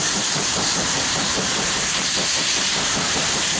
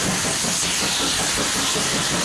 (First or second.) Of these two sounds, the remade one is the first